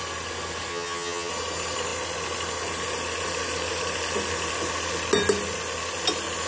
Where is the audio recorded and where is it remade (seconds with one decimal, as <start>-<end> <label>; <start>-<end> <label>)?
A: 0.0-0.7 recorded; 0.7-1.3 remade; 1.3-6.5 recorded